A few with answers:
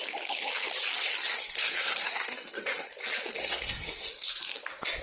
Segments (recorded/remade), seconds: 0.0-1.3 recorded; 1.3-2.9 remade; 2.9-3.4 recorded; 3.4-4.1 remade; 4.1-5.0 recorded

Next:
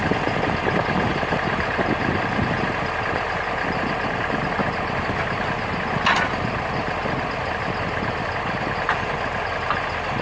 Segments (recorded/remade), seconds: 0.0-1.1 recorded; 1.1-1.9 remade; 1.9-10.2 recorded

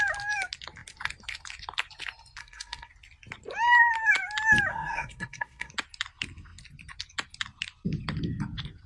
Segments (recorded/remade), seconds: 0.0-2.4 recorded; 2.4-2.9 remade; 2.9-4.7 recorded; 4.7-5.7 remade; 5.7-8.9 recorded